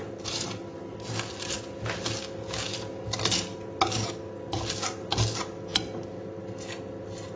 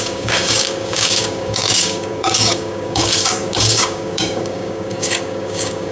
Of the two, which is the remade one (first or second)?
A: second